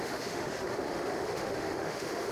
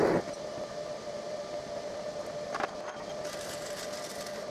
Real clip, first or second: second